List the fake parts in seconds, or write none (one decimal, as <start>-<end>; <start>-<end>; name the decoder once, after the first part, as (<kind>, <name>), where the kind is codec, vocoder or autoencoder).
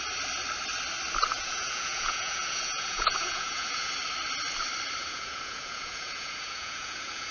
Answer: 1.3-3.9 (vocoder, Vocos); 5.0-7.3